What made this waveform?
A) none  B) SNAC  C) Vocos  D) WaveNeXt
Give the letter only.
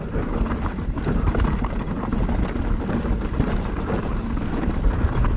A